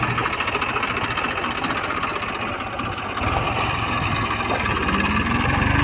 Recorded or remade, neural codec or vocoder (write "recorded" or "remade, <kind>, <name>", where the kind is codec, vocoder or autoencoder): recorded